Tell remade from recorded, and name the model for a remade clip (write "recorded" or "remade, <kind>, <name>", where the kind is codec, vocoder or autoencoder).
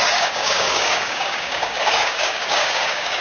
remade, codec, DAC